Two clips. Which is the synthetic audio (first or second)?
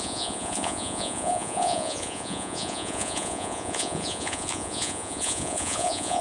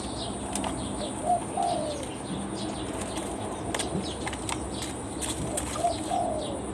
first